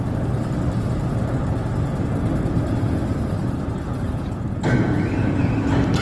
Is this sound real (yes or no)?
yes